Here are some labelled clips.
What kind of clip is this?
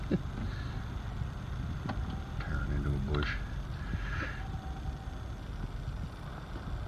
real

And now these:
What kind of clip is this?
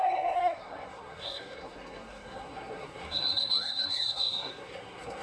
fake